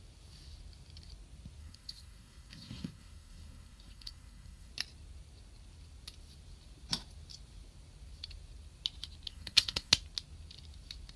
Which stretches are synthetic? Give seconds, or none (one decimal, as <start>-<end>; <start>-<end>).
1.6-4.7; 9.3-9.9

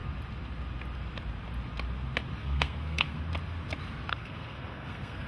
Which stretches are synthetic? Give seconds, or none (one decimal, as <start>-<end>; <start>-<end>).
2.4-3.2; 4.1-5.3

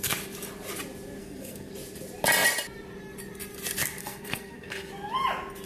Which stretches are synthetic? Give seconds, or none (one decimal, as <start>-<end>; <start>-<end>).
1.2-1.7; 4.0-4.9

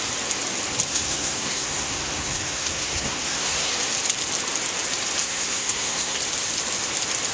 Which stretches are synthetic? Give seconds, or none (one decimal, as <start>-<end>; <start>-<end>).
0.9-3.7; 5.2-6.2

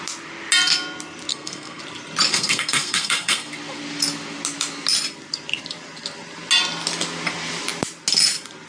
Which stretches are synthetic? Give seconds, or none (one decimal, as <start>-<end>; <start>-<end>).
1.3-1.8; 2.3-3.5